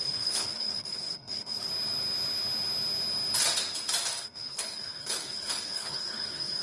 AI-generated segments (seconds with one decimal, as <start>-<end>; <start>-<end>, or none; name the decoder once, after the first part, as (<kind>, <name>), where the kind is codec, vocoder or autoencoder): 0.0-1.7 (codec, HILCodec); 4.2-6.6